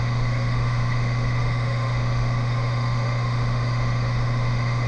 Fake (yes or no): yes